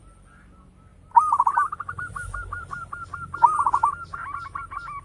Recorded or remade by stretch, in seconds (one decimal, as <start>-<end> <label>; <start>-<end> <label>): 0.0-0.9 recorded; 0.9-3.9 remade; 3.9-5.0 recorded